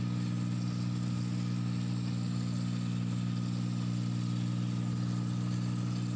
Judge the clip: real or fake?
real